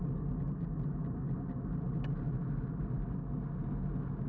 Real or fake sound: real